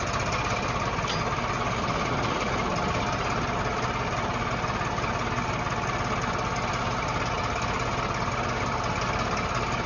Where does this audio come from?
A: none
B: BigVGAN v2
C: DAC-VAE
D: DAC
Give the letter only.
A